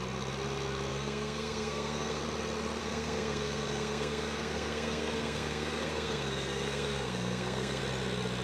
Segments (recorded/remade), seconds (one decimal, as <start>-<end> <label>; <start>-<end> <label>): 0.0-0.9 recorded; 0.9-2.2 remade; 2.2-2.8 recorded; 2.8-7.8 remade; 7.8-8.4 recorded